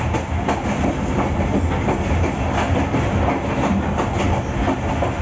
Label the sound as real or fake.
real